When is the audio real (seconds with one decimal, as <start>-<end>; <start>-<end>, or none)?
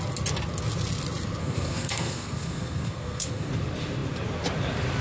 0.0-1.4; 3.5-5.0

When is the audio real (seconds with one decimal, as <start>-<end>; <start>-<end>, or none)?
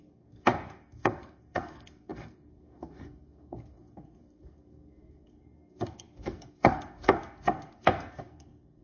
none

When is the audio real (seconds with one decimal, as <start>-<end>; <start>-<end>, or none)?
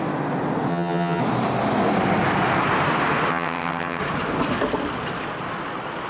0.0-0.7; 1.2-3.3; 4.0-6.1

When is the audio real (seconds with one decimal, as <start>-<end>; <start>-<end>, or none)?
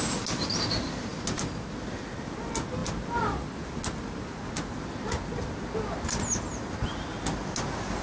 0.0-8.0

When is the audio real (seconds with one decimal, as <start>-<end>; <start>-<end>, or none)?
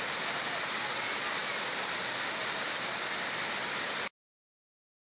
0.0-5.2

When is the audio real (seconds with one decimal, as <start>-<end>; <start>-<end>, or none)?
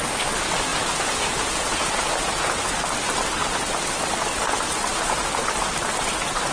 0.0-0.7; 2.3-6.5